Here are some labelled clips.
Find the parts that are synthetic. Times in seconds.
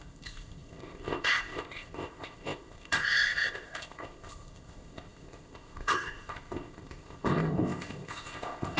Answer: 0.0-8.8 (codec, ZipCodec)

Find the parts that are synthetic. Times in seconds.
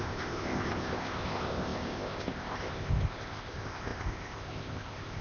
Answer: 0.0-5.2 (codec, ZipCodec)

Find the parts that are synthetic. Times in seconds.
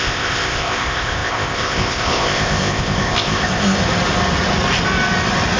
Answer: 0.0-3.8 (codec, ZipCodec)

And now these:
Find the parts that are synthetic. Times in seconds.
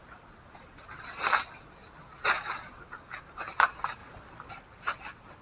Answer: none